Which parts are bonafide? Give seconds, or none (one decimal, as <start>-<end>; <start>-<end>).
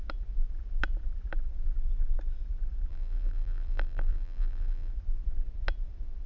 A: 0.0-2.9; 4.9-6.3